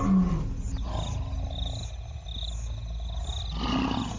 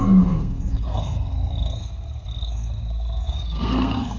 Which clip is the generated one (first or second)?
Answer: second